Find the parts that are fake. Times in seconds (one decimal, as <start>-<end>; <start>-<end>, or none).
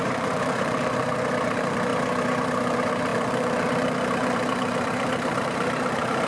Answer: 0.0-1.9; 2.4-6.3